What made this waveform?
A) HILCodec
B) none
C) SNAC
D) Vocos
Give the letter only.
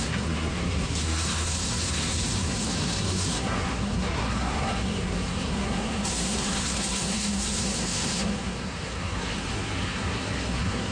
C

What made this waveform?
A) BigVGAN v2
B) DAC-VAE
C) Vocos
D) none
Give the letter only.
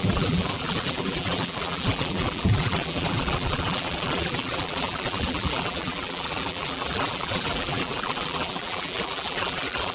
A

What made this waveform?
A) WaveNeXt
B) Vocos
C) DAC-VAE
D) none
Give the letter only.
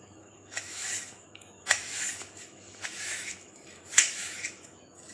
C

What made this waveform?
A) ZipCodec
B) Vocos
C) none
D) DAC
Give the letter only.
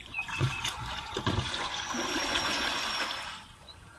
B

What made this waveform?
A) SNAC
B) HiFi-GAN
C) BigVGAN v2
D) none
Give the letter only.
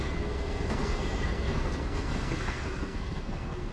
A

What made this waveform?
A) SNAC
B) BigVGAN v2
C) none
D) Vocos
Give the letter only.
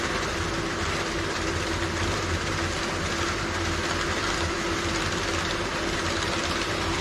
C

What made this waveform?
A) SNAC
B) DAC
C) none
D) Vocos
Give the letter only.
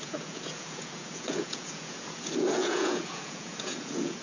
D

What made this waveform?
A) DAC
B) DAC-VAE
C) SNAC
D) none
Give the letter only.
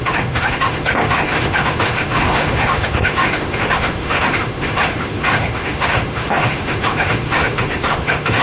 B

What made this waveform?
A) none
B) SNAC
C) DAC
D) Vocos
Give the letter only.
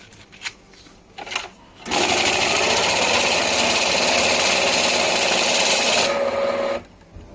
A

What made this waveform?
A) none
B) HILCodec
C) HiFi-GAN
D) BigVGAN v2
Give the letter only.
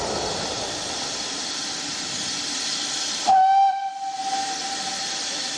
A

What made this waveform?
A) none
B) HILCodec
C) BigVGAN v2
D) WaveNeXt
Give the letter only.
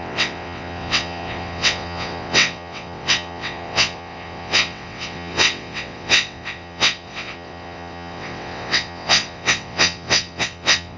D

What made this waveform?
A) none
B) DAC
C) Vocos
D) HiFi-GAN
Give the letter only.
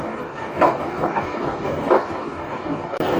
B